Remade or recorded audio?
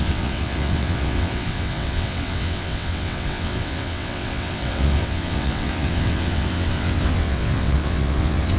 remade